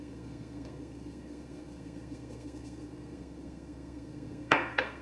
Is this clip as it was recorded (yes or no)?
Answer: no